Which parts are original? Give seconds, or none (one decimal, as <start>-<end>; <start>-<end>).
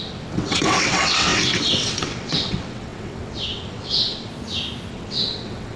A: 4.3-4.9